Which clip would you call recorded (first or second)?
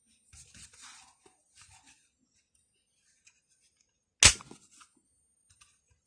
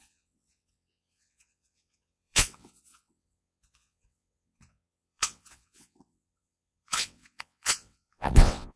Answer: first